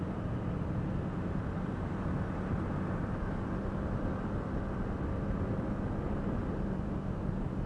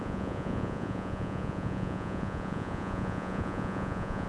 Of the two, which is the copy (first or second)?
second